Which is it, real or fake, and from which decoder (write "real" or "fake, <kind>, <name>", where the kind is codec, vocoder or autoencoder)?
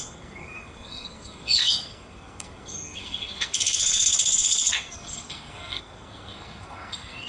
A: fake, codec, SNAC